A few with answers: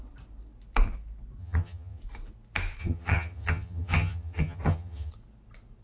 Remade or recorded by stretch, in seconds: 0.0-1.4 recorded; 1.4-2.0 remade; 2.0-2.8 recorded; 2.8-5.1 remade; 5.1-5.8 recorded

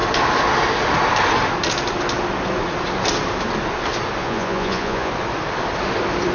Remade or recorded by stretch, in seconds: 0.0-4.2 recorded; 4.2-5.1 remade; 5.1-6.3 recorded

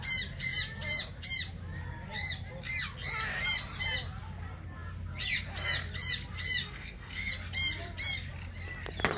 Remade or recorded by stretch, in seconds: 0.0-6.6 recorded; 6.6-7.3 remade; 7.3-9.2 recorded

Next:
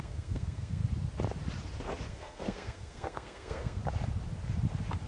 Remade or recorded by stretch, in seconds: 0.0-0.8 remade; 0.8-2.1 recorded; 2.1-3.8 remade; 3.8-5.1 recorded

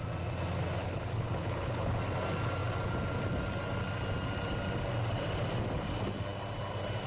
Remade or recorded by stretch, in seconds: 0.0-0.8 recorded; 0.8-2.0 remade; 2.0-7.1 recorded

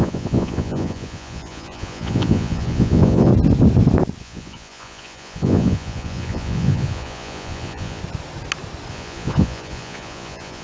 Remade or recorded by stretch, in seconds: 0.0-3.3 remade; 3.3-4.2 recorded; 4.2-8.0 remade; 8.0-8.9 recorded; 8.9-10.6 remade

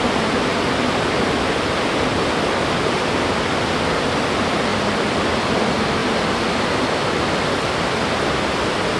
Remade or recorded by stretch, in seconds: 0.0-4.7 recorded; 4.7-5.6 remade; 5.6-6.0 recorded; 6.0-8.5 remade; 8.5-9.0 recorded